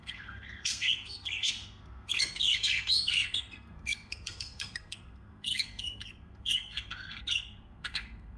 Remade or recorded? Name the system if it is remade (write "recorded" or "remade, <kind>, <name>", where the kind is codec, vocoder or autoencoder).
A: remade, codec, SNAC